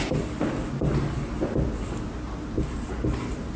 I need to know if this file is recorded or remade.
recorded